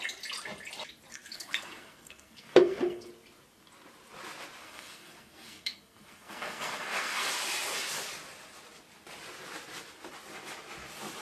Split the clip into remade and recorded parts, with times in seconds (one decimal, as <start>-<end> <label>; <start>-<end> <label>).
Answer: 0.0-1.1 recorded; 1.1-3.1 remade; 3.1-4.6 recorded; 4.6-7.3 remade; 7.3-11.2 recorded